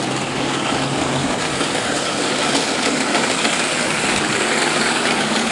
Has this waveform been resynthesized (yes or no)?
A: yes